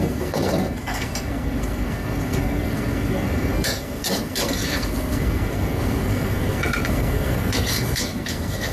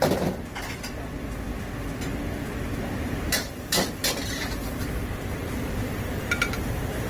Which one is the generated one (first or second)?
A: first